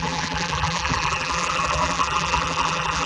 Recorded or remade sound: remade